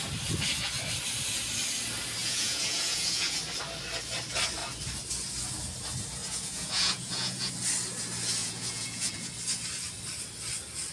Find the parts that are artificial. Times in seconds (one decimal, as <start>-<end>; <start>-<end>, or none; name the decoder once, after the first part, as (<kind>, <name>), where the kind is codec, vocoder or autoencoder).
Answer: 2.2-3.4 (vocoder, Vocos); 6.2-7.5; 8.4-9.3